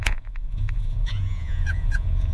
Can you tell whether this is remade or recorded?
remade